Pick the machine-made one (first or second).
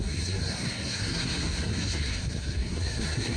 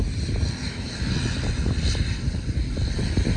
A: first